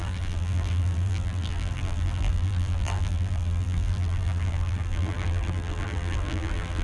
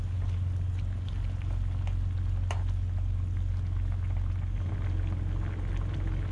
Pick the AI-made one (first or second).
first